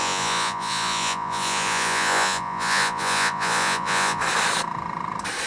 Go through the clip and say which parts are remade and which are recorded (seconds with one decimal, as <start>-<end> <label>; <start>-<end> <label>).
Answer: 0.0-4.2 remade; 4.2-5.5 recorded